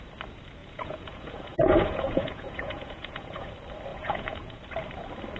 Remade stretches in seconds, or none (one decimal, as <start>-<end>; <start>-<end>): 0.6-3.5; 3.9-4.6